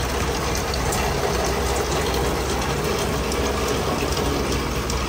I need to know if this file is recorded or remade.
recorded